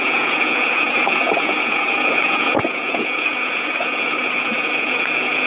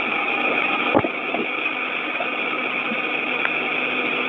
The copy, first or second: first